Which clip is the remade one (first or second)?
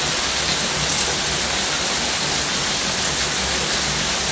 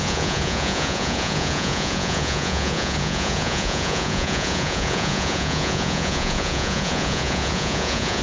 second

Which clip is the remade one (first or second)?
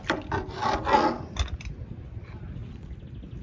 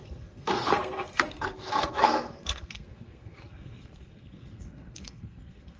second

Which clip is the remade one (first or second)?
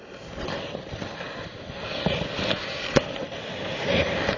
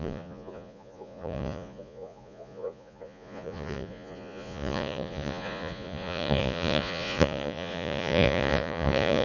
second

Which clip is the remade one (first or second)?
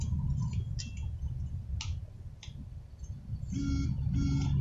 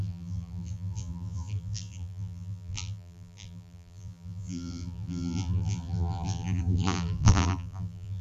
second